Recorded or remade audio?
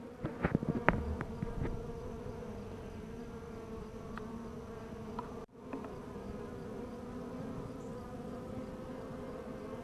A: recorded